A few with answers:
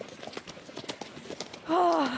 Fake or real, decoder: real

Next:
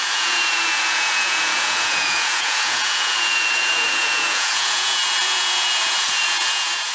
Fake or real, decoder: fake, vocoder, Vocos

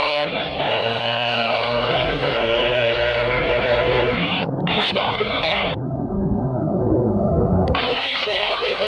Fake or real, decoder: fake, codec, SNAC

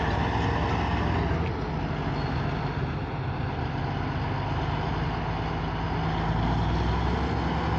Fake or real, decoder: real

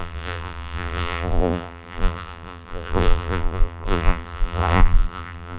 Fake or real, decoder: fake, vocoder, BigVGAN v2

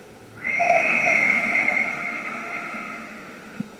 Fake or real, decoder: fake, autoencoder, DAC-VAE